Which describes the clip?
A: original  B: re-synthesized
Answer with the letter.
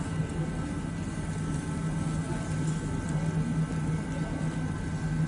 A